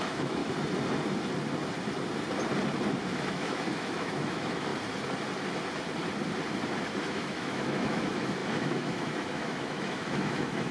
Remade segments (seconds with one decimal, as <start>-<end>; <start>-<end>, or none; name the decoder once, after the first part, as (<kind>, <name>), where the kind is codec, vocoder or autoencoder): 0.0-0.4 (autoencoder, DAC-VAE); 3.0-4.7; 7.0-10.7